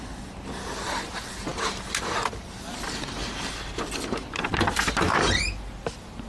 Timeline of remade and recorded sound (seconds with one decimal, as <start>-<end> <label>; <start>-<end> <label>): 0.0-6.3 recorded